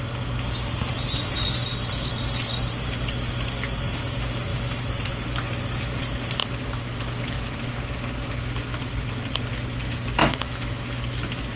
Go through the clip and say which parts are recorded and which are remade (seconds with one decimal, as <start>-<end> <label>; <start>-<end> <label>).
0.0-4.5 recorded; 4.5-5.1 remade; 5.1-6.4 recorded; 6.4-7.6 remade; 7.6-10.2 recorded; 10.2-11.0 remade; 11.0-11.6 recorded